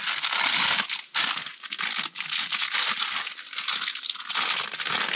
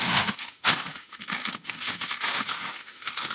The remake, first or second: second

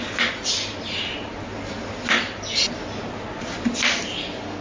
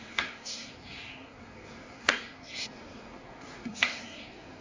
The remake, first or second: second